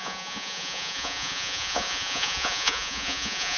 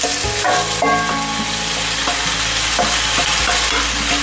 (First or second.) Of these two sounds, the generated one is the first